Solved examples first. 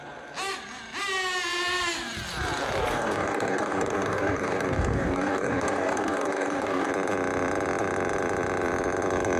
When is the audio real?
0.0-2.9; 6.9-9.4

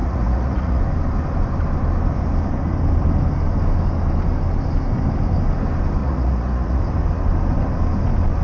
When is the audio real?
0.8-6.0; 6.8-8.4